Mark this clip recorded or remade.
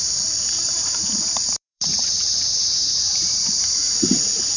remade